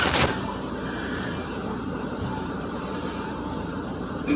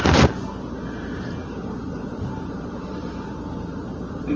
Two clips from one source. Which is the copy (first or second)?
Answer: first